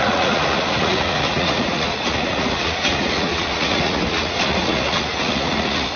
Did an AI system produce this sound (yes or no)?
yes